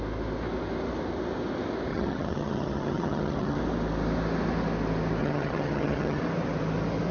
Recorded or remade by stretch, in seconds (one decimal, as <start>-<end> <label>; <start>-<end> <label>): 0.0-1.9 recorded; 1.9-3.6 remade; 3.6-5.2 recorded; 5.2-6.2 remade; 6.2-7.1 recorded